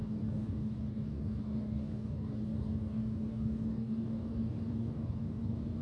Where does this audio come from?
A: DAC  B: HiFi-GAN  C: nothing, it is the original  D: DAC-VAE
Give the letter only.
A